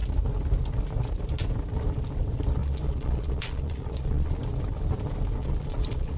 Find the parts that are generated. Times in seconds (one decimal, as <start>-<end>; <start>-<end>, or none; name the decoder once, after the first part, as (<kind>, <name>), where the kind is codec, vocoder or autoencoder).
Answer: 2.6-4.4 (vocoder, Vocos); 5.4-6.2